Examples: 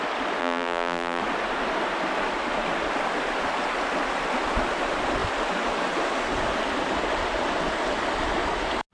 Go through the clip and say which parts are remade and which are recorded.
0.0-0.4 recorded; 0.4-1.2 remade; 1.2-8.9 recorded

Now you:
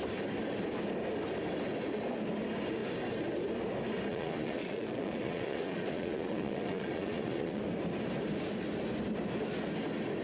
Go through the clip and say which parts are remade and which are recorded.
0.0-4.1 recorded; 4.1-7.6 remade; 7.6-10.2 recorded

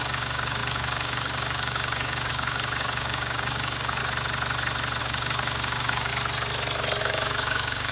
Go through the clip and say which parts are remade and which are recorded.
0.0-4.0 remade; 4.0-5.0 recorded; 5.0-6.1 remade; 6.1-7.0 recorded; 7.0-7.9 remade

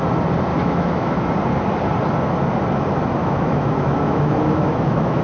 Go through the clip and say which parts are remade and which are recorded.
0.0-0.5 recorded; 0.5-1.1 remade; 1.1-3.2 recorded; 3.2-5.2 remade